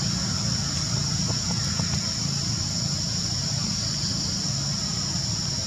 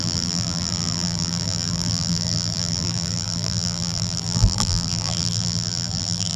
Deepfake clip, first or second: second